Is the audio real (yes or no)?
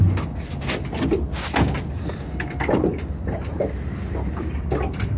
yes